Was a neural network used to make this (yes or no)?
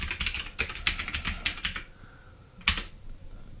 no